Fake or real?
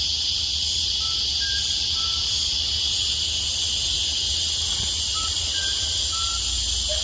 real